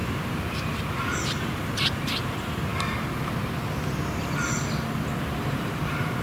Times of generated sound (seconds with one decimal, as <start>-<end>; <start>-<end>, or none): 0.0-2.7; 5.2-6.2